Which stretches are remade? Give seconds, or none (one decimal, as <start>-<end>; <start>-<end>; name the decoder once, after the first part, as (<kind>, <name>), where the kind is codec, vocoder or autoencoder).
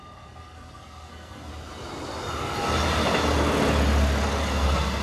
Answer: 0.0-1.5 (codec, SNAC); 4.5-5.0